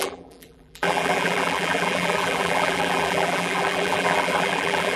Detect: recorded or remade remade